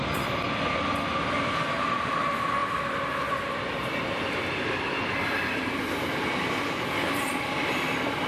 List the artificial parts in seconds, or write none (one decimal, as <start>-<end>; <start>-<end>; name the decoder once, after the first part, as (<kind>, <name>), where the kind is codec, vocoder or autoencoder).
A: none